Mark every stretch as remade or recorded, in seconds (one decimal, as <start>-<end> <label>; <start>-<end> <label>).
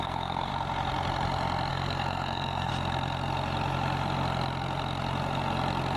0.0-0.5 remade; 0.5-1.7 recorded; 1.7-2.7 remade; 2.7-6.0 recorded